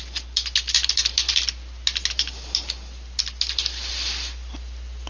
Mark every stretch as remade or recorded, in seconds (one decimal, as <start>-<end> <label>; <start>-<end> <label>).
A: 0.0-5.1 recorded